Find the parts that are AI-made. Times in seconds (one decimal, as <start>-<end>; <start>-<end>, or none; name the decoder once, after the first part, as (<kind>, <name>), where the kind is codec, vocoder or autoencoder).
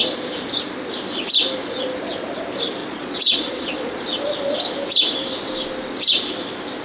2.8-4.0 (vocoder, Vocos)